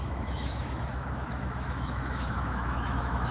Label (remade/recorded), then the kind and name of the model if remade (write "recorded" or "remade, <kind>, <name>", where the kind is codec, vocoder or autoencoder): remade, autoencoder, DAC-VAE